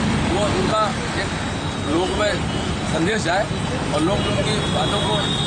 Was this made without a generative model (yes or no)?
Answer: yes